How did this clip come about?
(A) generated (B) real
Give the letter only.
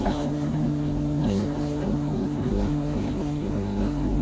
A